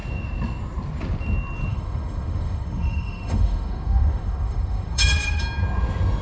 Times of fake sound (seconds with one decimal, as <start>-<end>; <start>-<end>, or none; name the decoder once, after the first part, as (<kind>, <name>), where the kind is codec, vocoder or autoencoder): 1.7-5.4 (autoencoder, DAC-VAE)